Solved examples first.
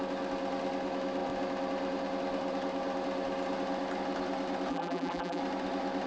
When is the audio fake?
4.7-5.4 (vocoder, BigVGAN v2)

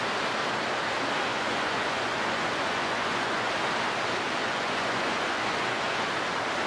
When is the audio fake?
1.3-3.5 (vocoder, Vocos); 4.4-6.1